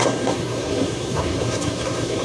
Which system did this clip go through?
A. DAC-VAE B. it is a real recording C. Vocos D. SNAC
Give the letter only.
D